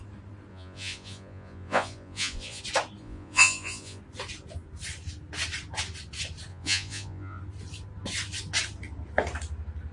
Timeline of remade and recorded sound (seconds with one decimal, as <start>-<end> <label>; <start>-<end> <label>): 0.0-0.5 recorded; 0.5-2.6 remade; 2.6-3.0 recorded; 3.0-4.0 remade; 4.0-6.5 recorded; 6.5-7.4 remade; 7.4-9.9 recorded